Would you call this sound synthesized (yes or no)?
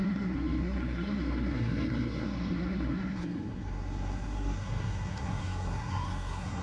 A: yes